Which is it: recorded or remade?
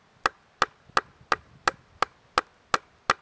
recorded